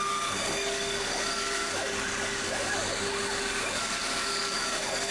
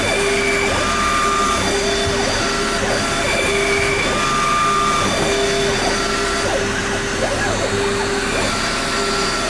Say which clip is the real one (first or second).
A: second